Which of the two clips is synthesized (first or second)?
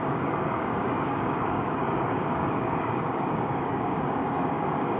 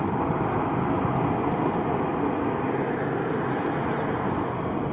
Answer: first